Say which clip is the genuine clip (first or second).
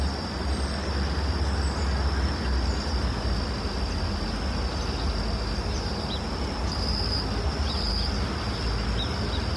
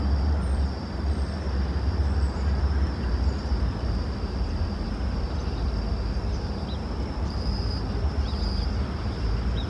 first